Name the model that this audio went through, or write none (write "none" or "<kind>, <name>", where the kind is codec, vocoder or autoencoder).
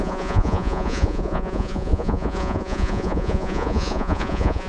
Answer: vocoder, Vocos